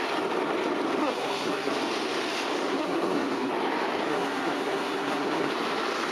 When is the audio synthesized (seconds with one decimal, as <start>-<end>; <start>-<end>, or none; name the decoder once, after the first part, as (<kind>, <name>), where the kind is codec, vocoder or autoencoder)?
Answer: 1.0-1.7 (codec, SNAC); 2.7-3.5; 4.1-5.5